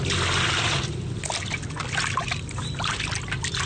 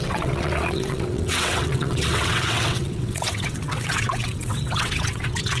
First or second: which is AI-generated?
second